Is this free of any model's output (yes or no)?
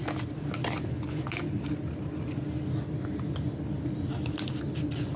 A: yes